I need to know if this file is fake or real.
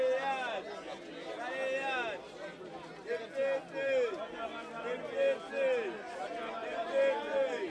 real